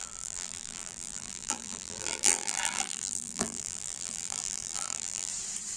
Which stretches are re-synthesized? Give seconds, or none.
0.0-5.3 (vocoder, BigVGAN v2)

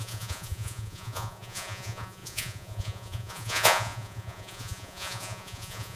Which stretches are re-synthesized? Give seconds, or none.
0.0-6.0 (vocoder, Vocos)

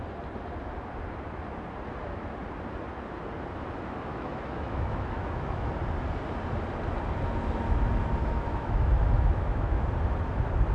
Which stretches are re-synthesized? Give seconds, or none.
4.1-5.7 (autoencoder, DAC-VAE); 8.2-9.9

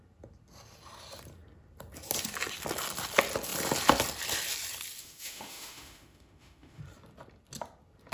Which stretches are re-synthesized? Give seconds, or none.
5.0-6.8 (autoencoder, DAC-VAE)

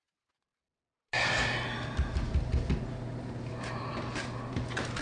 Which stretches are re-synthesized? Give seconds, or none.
none

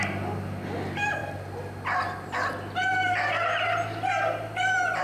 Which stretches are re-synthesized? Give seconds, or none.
none